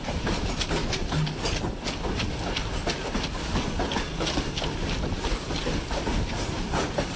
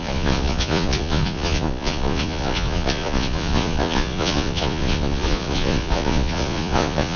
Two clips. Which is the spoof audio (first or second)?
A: second